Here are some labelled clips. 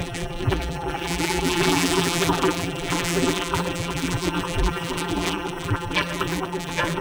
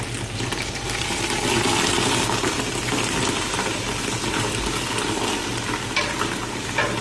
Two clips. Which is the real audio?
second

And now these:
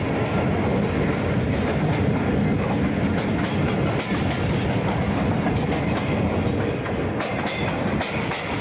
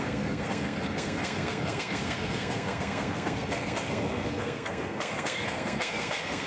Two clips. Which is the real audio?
first